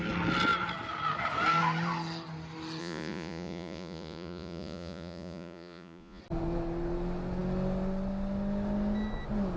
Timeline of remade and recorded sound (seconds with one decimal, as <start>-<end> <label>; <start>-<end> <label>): 0.0-2.8 recorded; 2.8-6.2 remade; 6.2-9.6 recorded